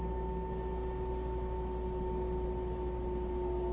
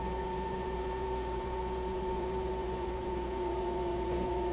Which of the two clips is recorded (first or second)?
first